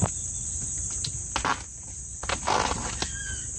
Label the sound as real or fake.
real